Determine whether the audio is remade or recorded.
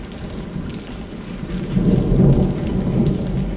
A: recorded